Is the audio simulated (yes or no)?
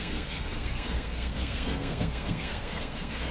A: yes